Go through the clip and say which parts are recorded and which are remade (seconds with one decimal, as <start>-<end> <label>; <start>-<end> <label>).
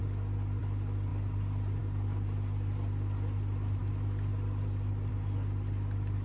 0.0-6.2 recorded